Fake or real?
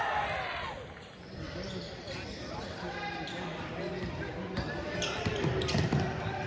fake